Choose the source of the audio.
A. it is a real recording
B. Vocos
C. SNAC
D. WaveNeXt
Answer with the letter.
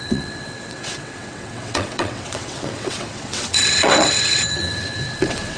D